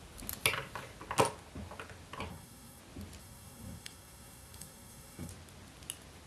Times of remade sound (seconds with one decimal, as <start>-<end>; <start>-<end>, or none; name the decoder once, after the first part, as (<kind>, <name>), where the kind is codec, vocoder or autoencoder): 2.3-2.8 (codec, SNAC); 3.2-5.3